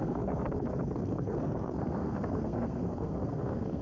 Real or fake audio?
fake